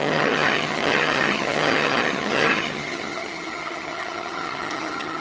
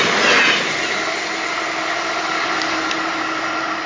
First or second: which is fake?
first